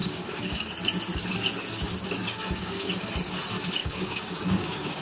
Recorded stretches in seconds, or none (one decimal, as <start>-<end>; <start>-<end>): 0.7-2.2; 3.1-3.8